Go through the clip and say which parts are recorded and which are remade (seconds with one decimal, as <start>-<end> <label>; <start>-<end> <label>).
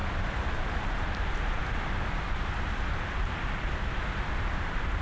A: 0.0-1.2 remade; 1.2-1.6 recorded; 1.6-2.4 remade; 2.4-5.0 recorded